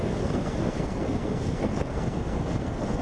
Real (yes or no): no